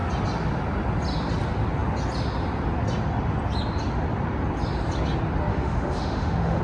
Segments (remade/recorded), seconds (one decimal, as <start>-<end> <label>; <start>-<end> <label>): 0.0-5.5 recorded; 5.5-6.6 remade